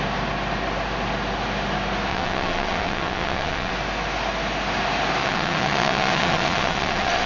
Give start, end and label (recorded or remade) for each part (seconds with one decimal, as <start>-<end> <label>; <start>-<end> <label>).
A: 0.0-2.1 recorded; 2.1-3.7 remade; 3.7-5.2 recorded; 5.2-7.3 remade